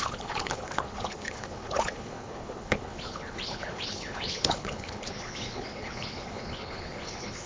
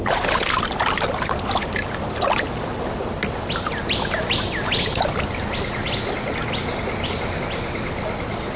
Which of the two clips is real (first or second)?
second